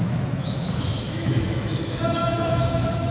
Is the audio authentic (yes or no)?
no